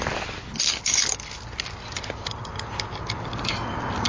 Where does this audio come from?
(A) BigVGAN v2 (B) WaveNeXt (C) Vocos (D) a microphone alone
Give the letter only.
D